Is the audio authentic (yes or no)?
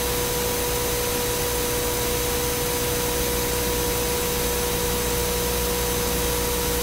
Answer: yes